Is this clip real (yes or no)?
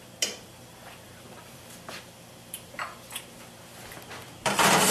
yes